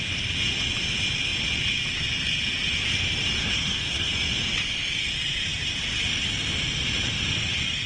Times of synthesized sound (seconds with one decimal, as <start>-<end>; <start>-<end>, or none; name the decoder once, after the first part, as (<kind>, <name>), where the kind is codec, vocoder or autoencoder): 3.4-4.1 (codec, SNAC)